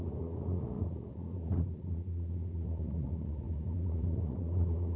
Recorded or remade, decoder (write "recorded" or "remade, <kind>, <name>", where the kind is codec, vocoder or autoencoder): remade, vocoder, Vocos